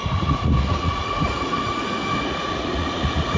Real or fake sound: fake